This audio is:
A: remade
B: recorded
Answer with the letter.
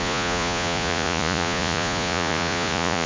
A